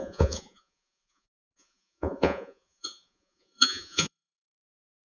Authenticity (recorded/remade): remade